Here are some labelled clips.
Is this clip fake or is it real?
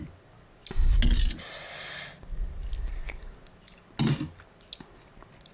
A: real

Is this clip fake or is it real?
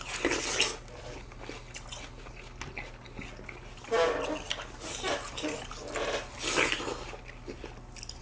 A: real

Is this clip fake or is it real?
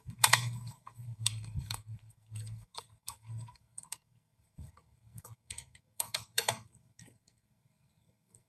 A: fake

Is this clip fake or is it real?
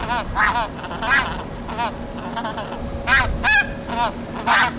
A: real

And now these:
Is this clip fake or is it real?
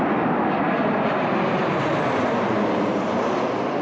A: real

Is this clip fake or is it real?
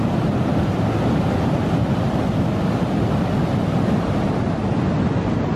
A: real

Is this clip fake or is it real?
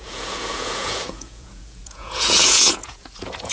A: fake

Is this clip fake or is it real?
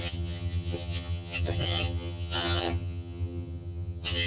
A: fake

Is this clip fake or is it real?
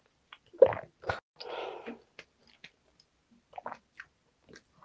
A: real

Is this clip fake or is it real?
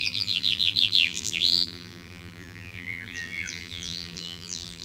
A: fake